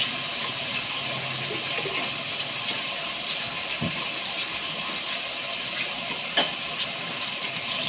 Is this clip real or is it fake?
real